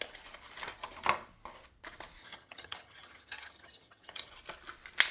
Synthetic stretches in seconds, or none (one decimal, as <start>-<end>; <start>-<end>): 2.2-4.3